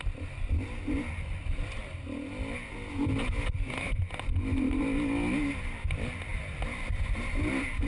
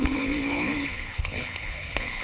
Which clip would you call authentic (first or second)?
first